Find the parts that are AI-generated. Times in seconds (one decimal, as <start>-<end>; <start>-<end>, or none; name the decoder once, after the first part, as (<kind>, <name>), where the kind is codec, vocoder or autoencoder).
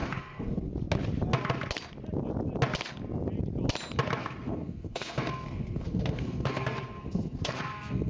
0.0-0.7 (codec, SNAC); 4.2-8.1